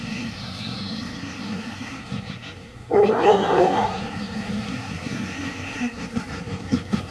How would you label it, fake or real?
fake